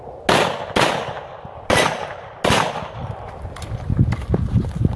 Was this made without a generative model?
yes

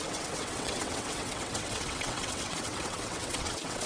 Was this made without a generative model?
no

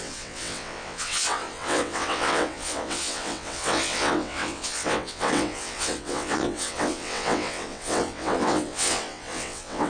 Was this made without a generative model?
no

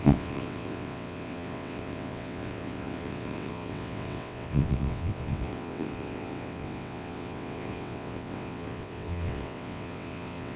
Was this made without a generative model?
no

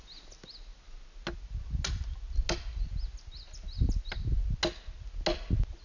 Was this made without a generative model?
yes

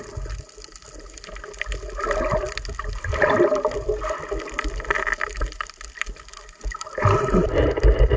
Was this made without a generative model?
yes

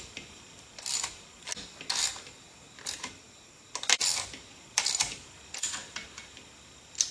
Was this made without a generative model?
yes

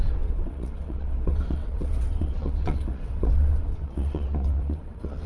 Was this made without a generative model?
no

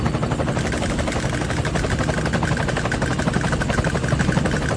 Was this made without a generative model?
yes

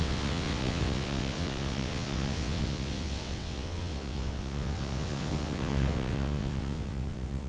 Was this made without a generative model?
no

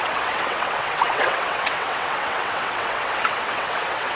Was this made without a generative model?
no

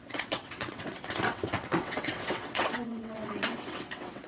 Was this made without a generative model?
no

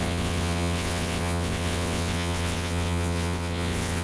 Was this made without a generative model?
no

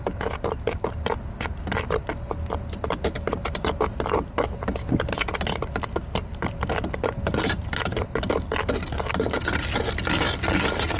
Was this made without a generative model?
yes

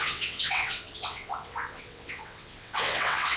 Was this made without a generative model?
no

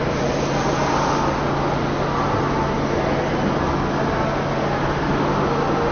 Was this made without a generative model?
yes